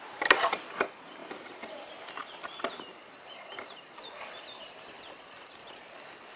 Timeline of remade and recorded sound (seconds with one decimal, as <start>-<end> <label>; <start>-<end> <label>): 0.0-6.4 remade